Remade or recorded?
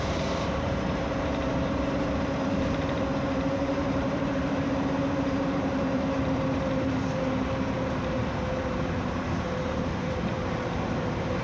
remade